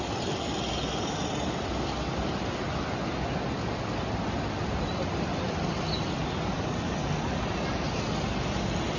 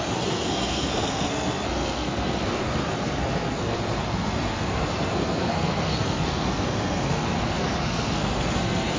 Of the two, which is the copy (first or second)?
second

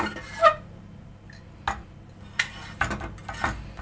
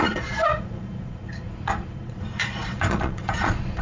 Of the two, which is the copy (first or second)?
second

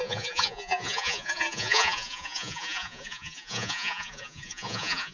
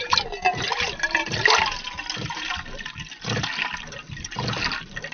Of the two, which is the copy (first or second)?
first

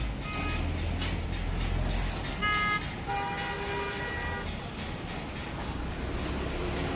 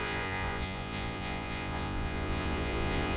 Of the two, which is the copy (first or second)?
second